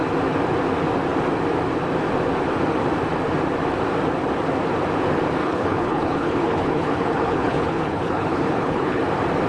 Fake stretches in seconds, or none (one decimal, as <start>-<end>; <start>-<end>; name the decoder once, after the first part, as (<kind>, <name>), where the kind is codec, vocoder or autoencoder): 5.4-9.0 (codec, HILCodec)